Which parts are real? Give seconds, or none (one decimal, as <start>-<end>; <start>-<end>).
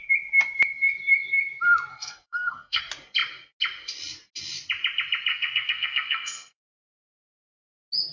0.0-1.9; 2.8-5.3; 6.6-8.1